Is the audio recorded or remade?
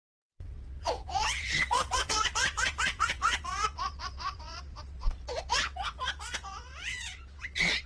remade